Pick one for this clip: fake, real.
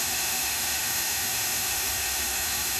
fake